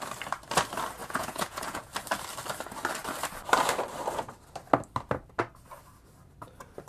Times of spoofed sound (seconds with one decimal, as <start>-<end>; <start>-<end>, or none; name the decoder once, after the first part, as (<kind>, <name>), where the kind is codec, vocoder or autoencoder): 1.0-1.9 (vocoder, Vocos)

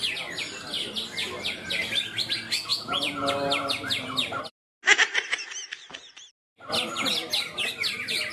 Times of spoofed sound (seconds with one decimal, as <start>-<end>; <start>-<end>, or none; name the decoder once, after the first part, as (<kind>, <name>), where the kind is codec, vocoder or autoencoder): 2.7-3.3 (vocoder, Vocos)

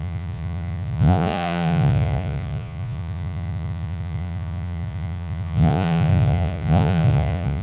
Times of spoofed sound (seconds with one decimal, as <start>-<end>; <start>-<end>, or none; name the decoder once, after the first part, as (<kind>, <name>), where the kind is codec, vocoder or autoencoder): 0.0-7.6 (vocoder, Vocos)

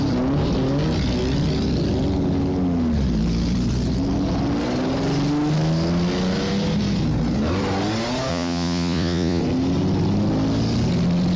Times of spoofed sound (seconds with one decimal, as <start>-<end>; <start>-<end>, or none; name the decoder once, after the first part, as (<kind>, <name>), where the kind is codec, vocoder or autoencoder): 8.3-9.4 (vocoder, Vocos)